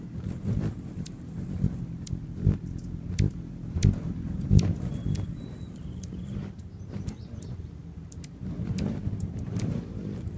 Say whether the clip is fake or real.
fake